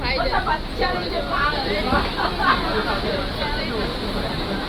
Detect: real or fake real